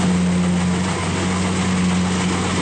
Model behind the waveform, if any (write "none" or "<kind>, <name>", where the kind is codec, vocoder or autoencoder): none